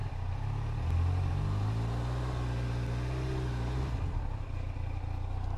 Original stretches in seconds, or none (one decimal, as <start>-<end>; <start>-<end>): 0.0-5.6